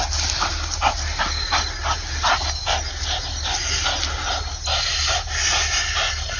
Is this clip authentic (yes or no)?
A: yes